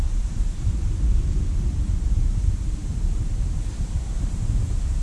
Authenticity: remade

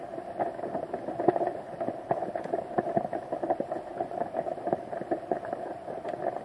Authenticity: recorded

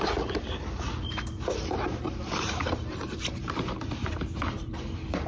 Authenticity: remade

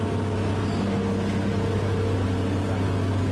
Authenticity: recorded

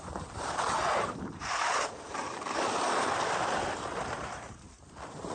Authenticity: remade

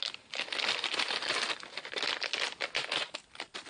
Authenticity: recorded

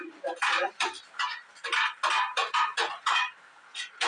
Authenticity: remade